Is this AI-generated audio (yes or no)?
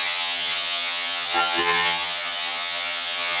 yes